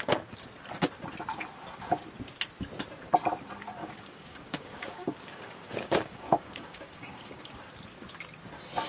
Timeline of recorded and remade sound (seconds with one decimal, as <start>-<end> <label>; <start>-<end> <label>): 0.0-3.8 recorded; 3.8-7.6 remade; 7.6-8.9 recorded